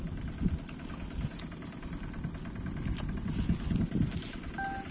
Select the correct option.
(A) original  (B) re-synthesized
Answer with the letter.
A